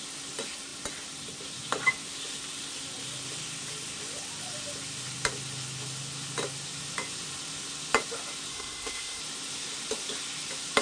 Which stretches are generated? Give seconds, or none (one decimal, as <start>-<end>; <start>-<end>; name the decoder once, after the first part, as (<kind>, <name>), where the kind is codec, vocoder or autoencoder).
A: 8.5-9.2 (codec, SNAC)